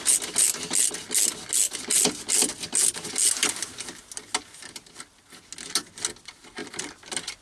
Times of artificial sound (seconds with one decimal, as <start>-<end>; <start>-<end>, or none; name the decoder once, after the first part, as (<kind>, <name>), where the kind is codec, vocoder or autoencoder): none